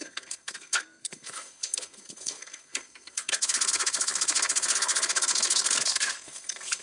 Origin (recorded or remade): remade